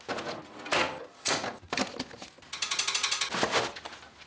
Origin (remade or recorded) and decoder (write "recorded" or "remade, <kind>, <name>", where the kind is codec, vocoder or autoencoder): recorded